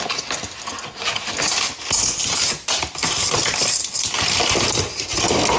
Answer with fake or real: real